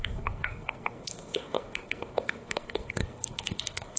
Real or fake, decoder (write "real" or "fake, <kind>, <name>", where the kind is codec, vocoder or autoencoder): fake, codec, SNAC